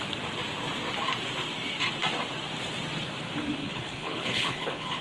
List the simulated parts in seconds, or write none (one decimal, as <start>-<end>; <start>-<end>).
3.6-5.0